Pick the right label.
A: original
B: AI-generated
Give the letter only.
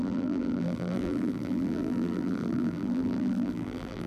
B